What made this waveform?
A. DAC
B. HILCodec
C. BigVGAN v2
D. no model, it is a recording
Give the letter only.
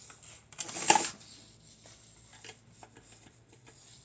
D